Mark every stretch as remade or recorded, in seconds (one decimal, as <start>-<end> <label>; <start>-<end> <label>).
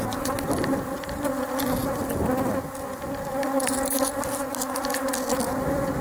0.0-6.0 recorded